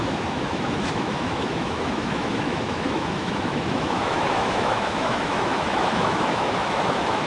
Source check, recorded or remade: remade